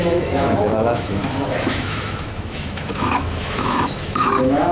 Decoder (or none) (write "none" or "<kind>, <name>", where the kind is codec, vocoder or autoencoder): autoencoder, DAC-VAE